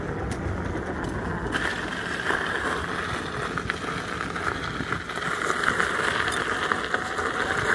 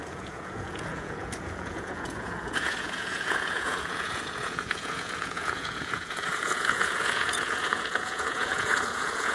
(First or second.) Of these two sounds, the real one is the first